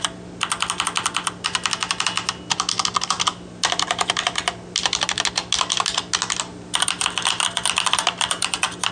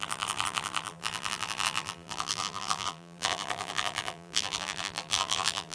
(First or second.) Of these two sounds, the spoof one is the second